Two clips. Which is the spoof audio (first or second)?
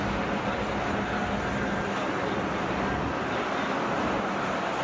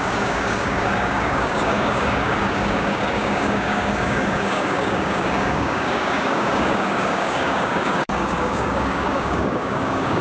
second